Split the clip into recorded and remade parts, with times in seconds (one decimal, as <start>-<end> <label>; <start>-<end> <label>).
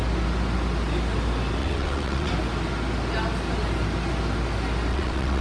0.0-1.6 recorded; 1.6-2.3 remade; 2.3-4.9 recorded; 4.9-5.4 remade